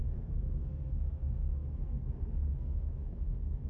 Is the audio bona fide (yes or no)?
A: no